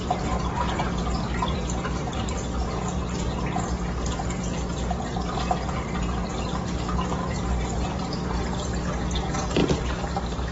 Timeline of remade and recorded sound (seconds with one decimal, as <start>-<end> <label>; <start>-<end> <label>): 0.0-9.6 recorded; 9.6-10.5 remade

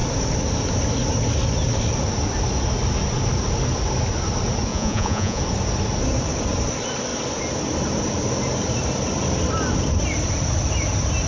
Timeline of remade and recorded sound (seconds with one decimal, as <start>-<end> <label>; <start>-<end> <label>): 0.0-4.7 recorded; 4.7-5.4 remade; 5.4-11.3 recorded

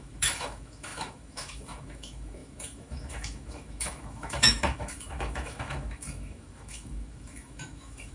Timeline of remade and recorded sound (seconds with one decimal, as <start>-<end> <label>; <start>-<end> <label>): 0.0-8.1 remade

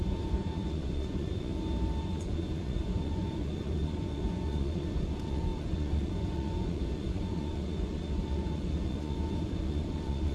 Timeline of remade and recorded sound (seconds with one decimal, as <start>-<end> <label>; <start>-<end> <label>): 0.0-1.5 remade; 1.5-2.0 recorded; 2.0-10.3 remade

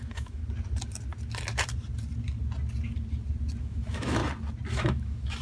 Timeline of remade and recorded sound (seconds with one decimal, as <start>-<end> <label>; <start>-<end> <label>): 0.0-0.4 remade; 0.4-3.6 recorded; 3.6-4.2 remade; 4.2-4.7 recorded; 4.7-5.4 remade

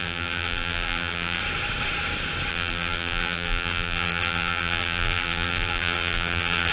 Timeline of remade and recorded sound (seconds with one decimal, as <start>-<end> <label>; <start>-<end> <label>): 0.0-1.4 remade; 1.4-2.5 recorded; 2.5-6.7 remade

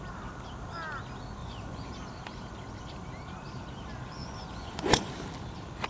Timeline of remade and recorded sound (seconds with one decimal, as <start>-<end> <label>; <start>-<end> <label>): 0.0-1.4 recorded; 1.4-1.9 remade; 1.9-4.2 recorded; 4.2-5.1 remade; 5.1-5.9 recorded